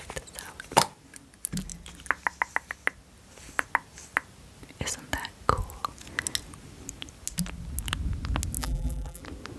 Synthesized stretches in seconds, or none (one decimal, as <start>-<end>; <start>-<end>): 8.6-9.2